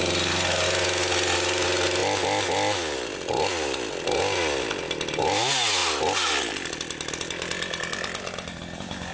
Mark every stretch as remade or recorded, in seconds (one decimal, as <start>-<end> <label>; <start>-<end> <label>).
0.0-9.1 recorded